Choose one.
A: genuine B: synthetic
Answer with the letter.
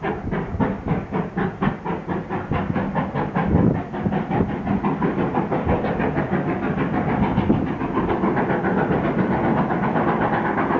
A